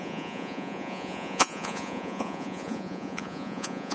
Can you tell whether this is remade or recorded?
remade